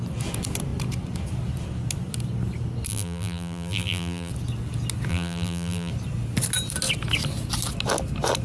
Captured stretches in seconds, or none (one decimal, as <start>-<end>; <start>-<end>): 0.0-2.9; 4.3-5.1; 5.9-8.4